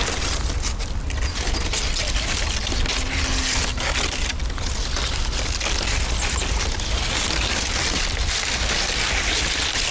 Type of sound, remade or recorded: recorded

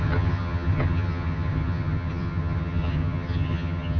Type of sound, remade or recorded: remade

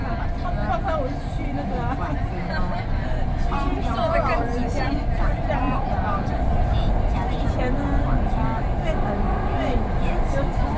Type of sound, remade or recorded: recorded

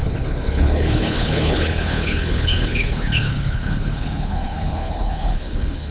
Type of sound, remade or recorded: remade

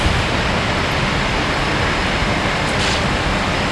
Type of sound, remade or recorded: recorded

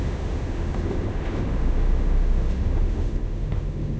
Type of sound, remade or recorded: remade